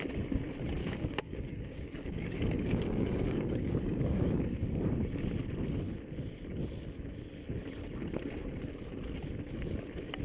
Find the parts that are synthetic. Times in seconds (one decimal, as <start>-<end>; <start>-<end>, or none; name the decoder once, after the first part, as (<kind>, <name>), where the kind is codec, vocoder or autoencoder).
0.8-4.7 (codec, DAC)